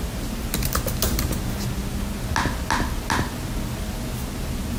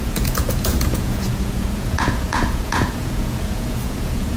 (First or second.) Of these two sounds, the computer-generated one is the second